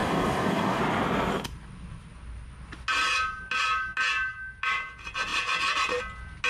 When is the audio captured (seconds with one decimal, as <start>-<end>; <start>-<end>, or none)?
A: 0.8-6.5